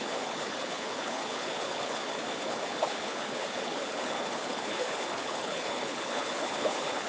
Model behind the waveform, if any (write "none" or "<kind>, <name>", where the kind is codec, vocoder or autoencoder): codec, HILCodec